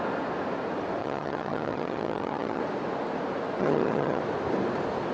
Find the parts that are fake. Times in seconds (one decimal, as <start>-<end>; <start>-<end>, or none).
1.0-2.6; 3.6-4.2